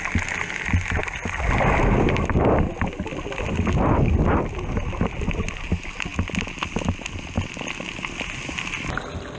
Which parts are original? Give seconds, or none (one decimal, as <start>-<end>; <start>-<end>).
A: 0.0-9.4